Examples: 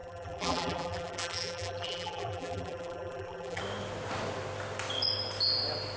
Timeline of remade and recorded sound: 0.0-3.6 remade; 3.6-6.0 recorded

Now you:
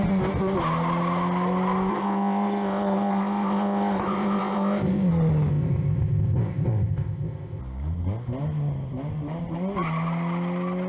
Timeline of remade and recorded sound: 0.0-1.9 recorded; 1.9-5.1 remade; 5.1-5.5 recorded; 5.5-7.6 remade; 7.6-10.9 recorded

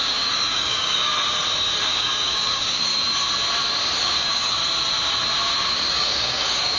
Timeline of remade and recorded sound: 0.0-1.1 remade; 1.1-1.8 recorded; 1.8-2.9 remade; 2.9-4.0 recorded; 4.0-4.6 remade; 4.6-5.9 recorded; 5.9-6.8 remade

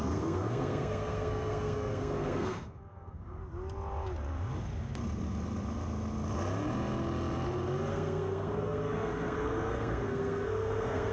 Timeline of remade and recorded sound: 0.0-3.4 remade; 3.4-7.9 recorded; 7.9-11.1 remade